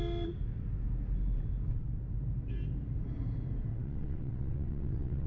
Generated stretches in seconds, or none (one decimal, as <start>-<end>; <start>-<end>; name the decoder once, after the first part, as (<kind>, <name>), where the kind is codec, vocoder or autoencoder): 3.7-5.3 (vocoder, WaveNeXt)

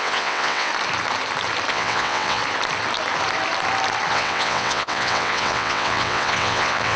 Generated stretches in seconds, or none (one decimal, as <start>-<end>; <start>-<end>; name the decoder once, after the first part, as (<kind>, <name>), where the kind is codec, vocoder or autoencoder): 0.0-0.7 (vocoder, WaveNeXt); 1.7-2.4; 4.1-7.0

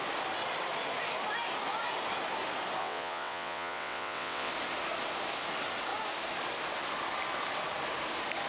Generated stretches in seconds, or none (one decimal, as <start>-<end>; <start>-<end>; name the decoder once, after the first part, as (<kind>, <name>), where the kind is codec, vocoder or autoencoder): 2.8-4.5 (vocoder, WaveNeXt)

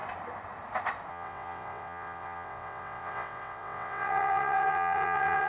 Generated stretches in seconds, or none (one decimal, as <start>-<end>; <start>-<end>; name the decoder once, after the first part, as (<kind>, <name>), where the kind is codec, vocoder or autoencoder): 1.1-5.5 (vocoder, WaveNeXt)

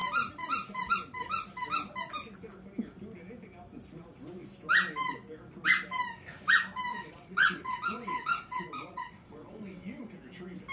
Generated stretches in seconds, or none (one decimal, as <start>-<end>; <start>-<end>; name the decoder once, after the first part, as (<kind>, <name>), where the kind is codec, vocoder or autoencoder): 6.9-10.1 (vocoder, WaveNeXt)

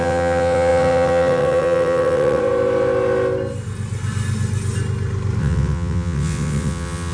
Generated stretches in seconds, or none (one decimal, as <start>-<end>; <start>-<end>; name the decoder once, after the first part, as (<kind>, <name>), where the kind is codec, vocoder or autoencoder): 0.0-2.4 (vocoder, WaveNeXt); 5.4-7.1

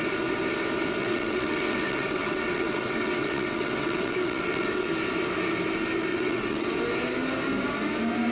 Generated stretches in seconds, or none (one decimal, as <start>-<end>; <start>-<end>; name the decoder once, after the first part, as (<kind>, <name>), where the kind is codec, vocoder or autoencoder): 1.0-4.9 (vocoder, WaveNeXt); 6.1-6.7